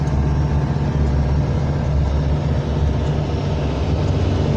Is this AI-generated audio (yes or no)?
no